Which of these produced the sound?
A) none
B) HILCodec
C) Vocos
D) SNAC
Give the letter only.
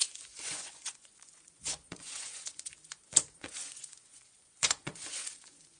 C